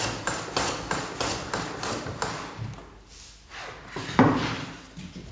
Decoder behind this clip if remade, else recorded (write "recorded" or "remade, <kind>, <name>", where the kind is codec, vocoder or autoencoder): recorded